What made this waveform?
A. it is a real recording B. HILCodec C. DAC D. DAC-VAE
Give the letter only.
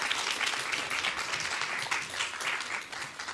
A